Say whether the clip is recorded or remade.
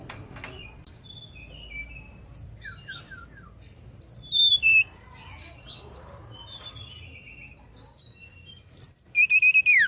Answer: recorded